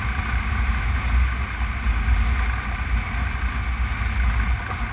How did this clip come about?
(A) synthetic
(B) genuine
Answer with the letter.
B